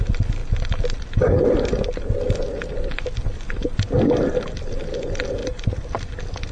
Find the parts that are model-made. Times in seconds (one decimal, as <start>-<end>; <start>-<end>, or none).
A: 5.4-6.0